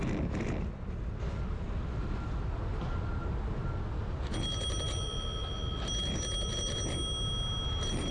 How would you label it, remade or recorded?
recorded